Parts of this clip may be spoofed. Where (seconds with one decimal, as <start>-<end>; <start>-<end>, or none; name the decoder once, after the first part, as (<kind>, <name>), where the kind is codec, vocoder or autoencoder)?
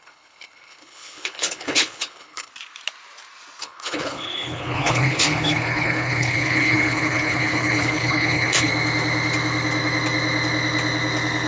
0.0-2.5 (codec, HILCodec); 3.6-8.7